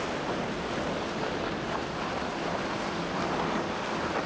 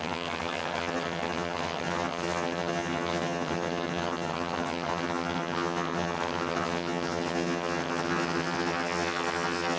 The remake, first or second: second